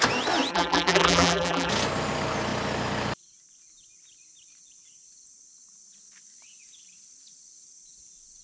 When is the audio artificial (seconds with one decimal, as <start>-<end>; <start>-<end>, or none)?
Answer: 0.5-1.7